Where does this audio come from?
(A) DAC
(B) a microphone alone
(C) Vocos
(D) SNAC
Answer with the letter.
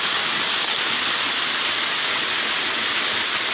B